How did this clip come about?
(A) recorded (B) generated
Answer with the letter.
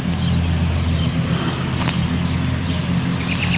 A